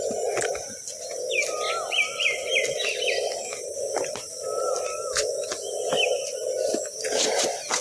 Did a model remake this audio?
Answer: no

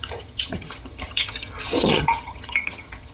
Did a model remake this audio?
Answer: yes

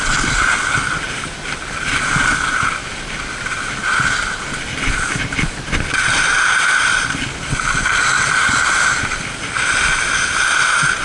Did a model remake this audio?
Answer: no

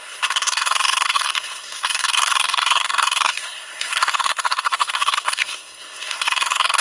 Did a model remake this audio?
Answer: yes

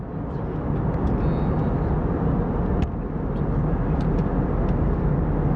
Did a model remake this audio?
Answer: no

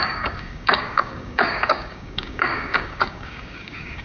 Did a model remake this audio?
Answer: yes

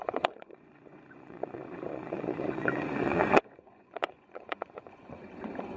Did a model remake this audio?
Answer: yes